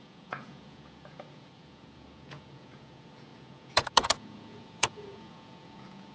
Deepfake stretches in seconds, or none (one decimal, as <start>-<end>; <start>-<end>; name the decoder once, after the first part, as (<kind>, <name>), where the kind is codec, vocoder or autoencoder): 0.0-6.1 (vocoder, Vocos)